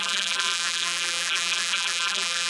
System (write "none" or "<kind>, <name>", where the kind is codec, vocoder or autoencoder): vocoder, BigVGAN v2